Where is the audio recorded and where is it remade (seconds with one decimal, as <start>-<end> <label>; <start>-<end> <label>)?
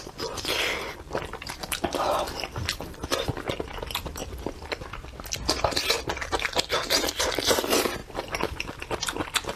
0.0-4.2 recorded; 4.2-7.3 remade; 7.3-8.0 recorded; 8.0-8.7 remade; 8.7-9.6 recorded